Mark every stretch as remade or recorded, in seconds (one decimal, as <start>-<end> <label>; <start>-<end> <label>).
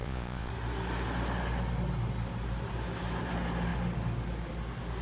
0.0-0.5 remade; 0.5-5.0 recorded